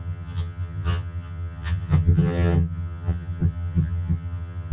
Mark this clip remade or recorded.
remade